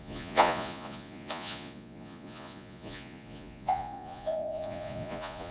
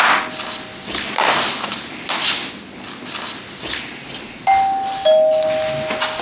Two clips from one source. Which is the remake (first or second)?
first